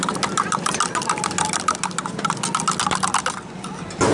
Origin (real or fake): real